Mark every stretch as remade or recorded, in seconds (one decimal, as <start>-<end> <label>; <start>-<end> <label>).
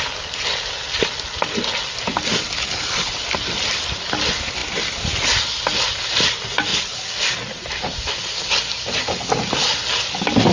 0.0-2.6 recorded; 2.6-3.1 remade; 3.1-10.5 recorded